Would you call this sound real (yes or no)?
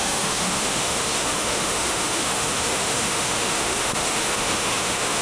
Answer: no